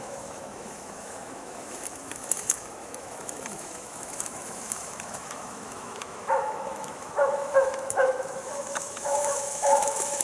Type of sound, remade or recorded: remade